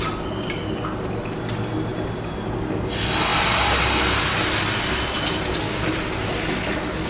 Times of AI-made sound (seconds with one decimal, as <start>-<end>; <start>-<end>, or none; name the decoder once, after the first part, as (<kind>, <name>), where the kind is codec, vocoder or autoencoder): none